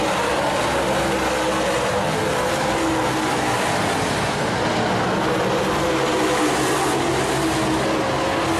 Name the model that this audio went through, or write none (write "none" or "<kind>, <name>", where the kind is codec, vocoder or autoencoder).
none